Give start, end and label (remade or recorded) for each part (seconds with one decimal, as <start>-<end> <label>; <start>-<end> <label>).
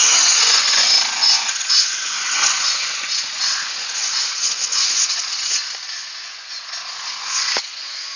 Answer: 0.0-5.6 remade; 5.6-6.1 recorded; 6.1-8.2 remade